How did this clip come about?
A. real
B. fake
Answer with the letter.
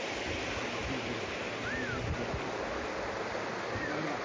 A